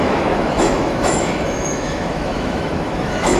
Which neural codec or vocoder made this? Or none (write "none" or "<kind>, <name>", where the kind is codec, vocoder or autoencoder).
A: autoencoder, DAC-VAE